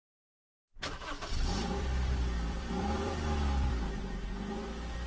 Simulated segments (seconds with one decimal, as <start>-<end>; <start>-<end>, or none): 0.6-3.7